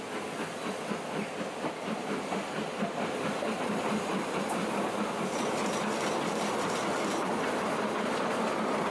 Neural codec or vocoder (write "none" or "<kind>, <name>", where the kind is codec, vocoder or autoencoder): none